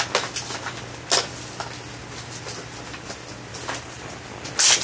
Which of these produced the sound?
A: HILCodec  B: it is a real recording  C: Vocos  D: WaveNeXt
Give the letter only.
B